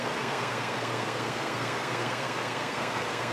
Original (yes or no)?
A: no